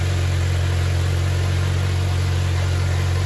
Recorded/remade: recorded